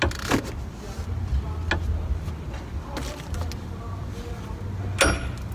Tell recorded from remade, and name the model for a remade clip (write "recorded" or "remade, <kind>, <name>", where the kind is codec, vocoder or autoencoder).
recorded